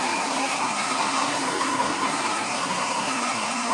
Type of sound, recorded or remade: remade